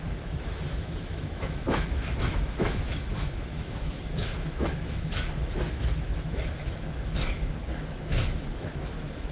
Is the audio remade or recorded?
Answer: remade